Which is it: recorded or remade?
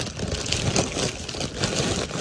recorded